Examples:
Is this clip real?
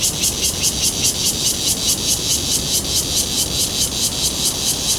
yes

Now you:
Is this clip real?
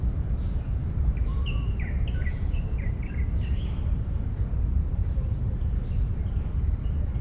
no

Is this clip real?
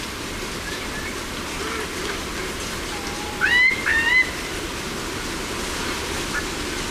no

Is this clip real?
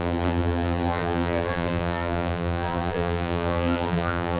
no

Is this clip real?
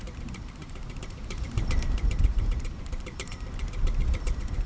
no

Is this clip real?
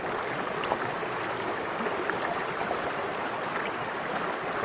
yes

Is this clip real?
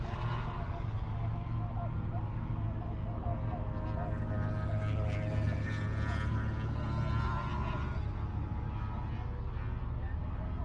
yes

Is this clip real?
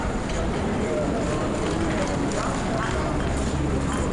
no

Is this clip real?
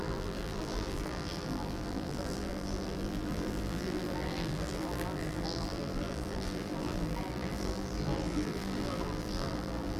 no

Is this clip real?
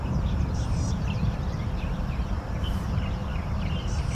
no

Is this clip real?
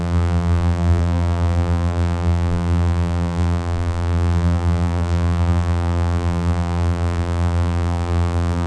no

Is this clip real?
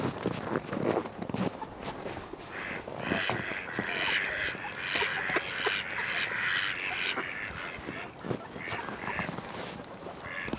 yes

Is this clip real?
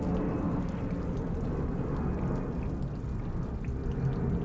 yes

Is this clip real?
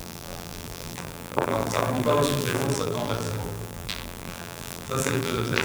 no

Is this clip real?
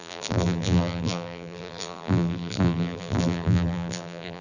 no